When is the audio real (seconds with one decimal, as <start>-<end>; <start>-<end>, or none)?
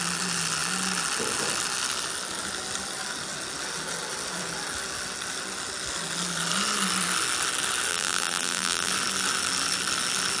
0.0-7.9; 8.9-10.4